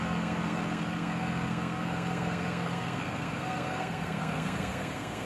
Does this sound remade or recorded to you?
remade